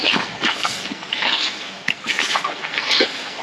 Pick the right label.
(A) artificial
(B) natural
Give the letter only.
A